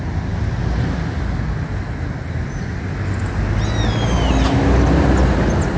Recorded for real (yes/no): yes